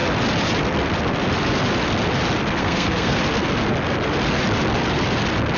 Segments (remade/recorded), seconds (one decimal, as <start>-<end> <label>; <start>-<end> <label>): 0.0-2.6 recorded; 2.6-3.2 remade; 3.2-5.6 recorded